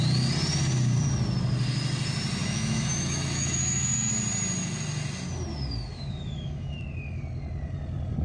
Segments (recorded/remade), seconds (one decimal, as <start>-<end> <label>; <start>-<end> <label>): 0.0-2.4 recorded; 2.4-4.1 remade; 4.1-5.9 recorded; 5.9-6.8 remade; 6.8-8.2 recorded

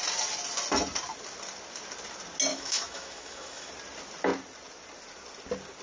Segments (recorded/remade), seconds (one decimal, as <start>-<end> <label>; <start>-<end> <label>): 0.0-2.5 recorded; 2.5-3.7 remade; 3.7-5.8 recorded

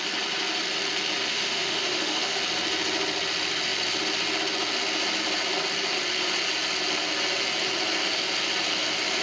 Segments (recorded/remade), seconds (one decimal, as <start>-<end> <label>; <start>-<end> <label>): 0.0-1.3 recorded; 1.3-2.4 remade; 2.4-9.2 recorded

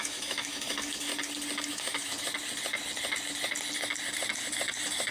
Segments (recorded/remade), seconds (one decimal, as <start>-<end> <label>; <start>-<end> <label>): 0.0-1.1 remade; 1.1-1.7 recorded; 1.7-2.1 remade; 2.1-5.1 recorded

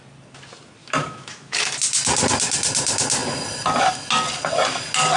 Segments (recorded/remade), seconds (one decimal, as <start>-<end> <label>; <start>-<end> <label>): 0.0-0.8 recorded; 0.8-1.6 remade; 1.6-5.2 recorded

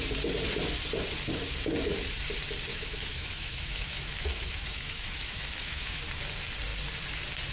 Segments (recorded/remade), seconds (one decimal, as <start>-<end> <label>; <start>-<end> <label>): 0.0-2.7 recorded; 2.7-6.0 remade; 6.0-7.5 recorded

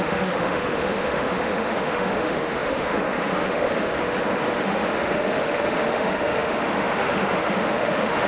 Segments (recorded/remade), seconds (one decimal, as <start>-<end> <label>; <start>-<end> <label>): 0.0-8.3 remade